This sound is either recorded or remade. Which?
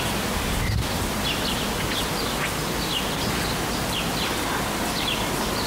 recorded